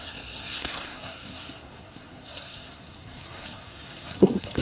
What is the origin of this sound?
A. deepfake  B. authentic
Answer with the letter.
A